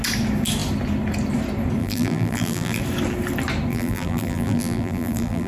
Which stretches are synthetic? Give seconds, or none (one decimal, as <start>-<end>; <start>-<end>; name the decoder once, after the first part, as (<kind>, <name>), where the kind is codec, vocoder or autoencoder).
1.8-2.8 (vocoder, BigVGAN v2); 3.7-5.5